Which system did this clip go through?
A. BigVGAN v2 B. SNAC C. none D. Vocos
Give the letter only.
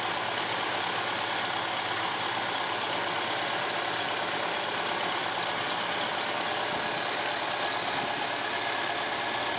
C